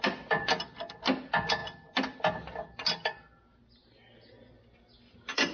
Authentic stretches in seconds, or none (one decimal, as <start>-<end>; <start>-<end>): 0.0-5.5